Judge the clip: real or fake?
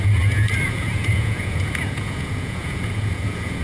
fake